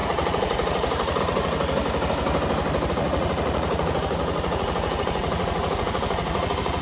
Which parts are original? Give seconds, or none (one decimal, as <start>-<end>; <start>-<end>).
1.8-2.9